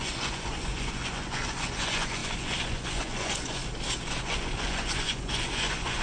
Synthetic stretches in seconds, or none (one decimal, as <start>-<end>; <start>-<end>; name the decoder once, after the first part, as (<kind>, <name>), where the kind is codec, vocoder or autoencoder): 0.0-3.6 (vocoder, Vocos); 4.2-6.0